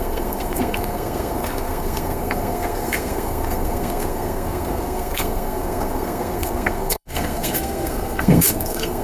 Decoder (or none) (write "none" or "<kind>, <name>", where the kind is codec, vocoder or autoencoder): codec, SNAC